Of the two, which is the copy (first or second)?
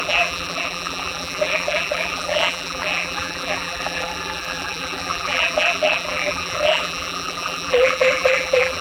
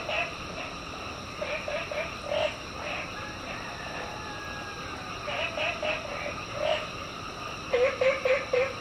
first